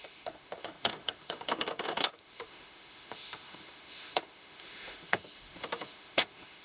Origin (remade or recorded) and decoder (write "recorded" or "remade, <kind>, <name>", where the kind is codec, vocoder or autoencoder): remade, autoencoder, DAC-VAE